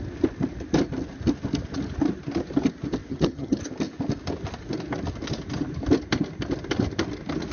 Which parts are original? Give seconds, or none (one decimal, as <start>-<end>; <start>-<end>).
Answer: 0.0-3.1; 3.6-7.5